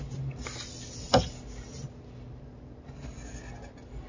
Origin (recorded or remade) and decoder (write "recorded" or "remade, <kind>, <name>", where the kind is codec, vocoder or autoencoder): recorded